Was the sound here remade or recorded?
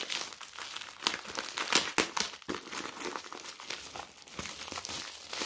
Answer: recorded